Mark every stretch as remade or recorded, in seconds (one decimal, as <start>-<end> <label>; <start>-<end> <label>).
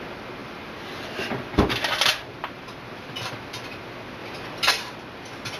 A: 0.0-0.4 recorded; 0.4-1.5 remade; 1.5-2.1 recorded; 2.1-3.3 remade; 3.3-4.2 recorded; 4.2-4.7 remade; 4.7-5.6 recorded